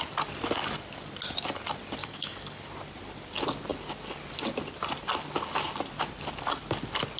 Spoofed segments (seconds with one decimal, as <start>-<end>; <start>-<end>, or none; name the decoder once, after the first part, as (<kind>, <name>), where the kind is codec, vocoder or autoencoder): 2.0-2.6 (codec, DAC)